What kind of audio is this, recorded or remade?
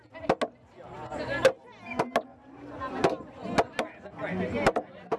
recorded